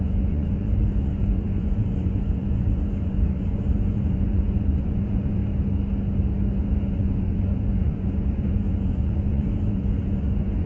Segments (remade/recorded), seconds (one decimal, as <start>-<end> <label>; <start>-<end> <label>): 0.0-5.4 remade; 5.4-6.6 recorded; 6.6-10.7 remade